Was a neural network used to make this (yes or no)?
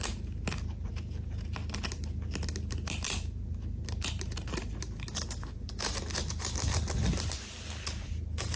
no